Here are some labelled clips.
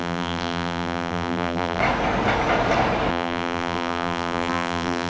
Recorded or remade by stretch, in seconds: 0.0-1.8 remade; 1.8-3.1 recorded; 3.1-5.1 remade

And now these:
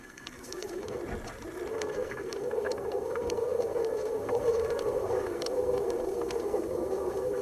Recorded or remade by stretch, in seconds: 0.0-1.0 remade; 1.0-1.7 recorded; 1.7-7.4 remade